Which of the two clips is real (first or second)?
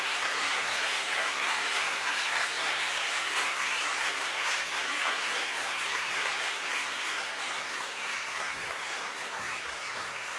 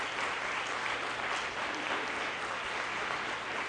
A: second